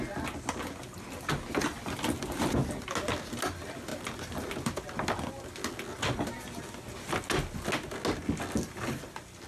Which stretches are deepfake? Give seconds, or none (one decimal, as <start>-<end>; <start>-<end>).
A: none